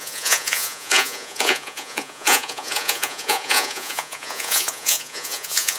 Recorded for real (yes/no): no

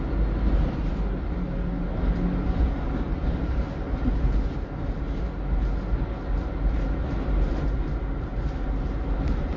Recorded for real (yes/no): yes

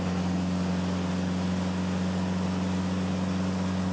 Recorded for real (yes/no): yes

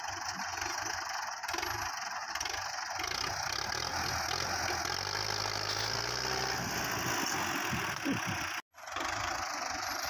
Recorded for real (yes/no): yes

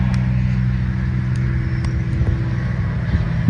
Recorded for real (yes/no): yes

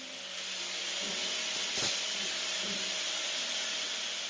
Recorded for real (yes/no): yes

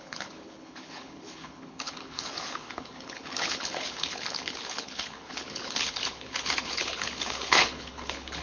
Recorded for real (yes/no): no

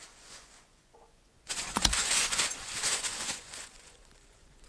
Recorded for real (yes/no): no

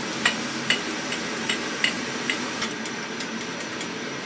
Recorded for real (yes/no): no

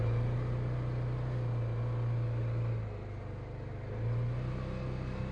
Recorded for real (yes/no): yes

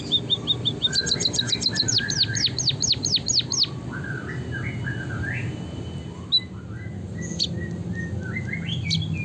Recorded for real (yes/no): yes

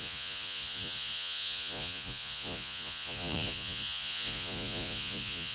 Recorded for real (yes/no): no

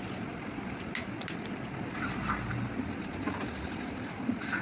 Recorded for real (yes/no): yes